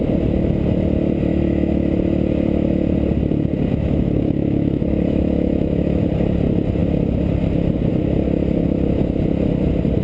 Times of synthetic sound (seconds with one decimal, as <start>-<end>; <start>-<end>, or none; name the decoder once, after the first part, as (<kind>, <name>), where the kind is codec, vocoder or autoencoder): 1.3-1.9 (autoencoder, DAC-VAE); 3.7-6.0